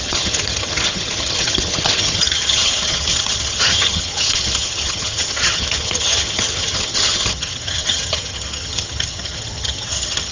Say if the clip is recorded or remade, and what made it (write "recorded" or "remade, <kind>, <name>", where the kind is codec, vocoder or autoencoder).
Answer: remade, vocoder, HiFi-GAN